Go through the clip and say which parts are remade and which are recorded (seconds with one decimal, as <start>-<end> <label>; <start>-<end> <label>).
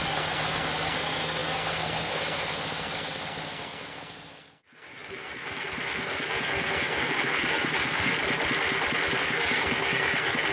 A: 0.0-8.1 remade; 8.1-9.2 recorded; 9.2-10.5 remade